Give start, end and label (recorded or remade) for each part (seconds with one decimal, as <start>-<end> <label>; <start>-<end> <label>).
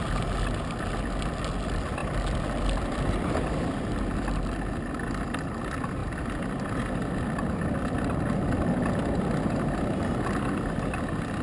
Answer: 0.0-11.4 recorded